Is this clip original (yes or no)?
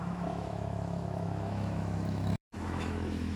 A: no